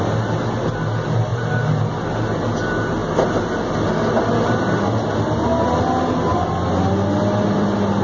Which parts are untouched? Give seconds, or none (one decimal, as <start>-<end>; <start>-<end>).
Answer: 0.0-8.0